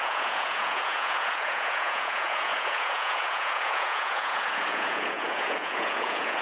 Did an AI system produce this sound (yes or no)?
yes